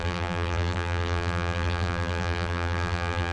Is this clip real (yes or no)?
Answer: no